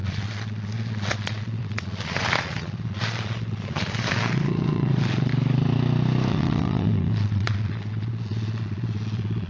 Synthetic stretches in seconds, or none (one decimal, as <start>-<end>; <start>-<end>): 0.0-5.3; 6.3-9.5